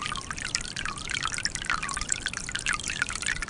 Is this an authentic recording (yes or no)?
no